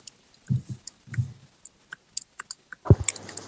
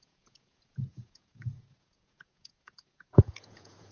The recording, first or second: first